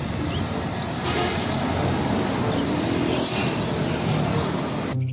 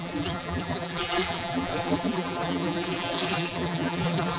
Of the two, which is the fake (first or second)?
second